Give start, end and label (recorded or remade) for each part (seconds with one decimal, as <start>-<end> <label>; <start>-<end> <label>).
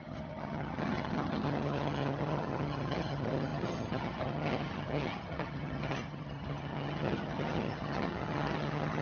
0.0-9.0 remade